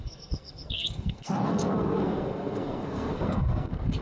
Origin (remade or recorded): remade